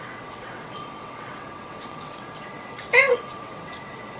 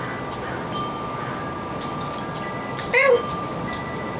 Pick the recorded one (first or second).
second